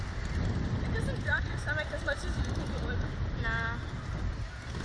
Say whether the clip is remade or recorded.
recorded